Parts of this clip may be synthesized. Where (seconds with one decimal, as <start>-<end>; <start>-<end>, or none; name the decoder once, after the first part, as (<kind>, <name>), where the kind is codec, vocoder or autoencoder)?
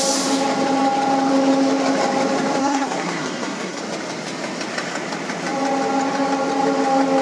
2.6-3.8 (codec, SNAC)